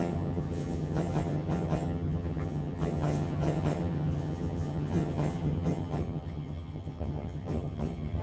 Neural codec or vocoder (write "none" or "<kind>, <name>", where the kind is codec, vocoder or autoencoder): vocoder, HiFi-GAN